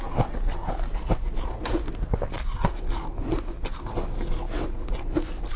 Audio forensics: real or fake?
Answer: real